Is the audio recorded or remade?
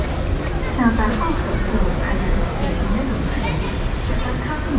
recorded